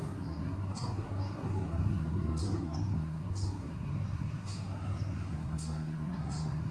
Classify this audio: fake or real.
fake